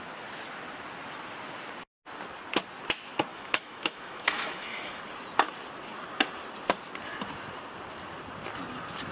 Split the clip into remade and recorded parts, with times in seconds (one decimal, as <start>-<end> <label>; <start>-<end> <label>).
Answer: 0.0-3.3 recorded; 3.3-5.0 remade; 5.0-9.1 recorded